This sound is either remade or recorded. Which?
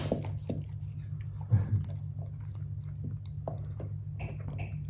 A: recorded